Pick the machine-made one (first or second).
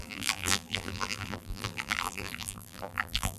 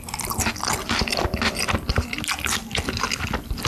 first